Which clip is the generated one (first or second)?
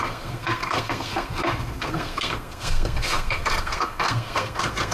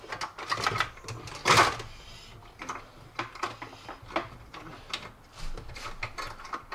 first